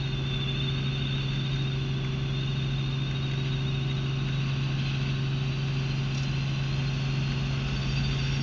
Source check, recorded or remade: recorded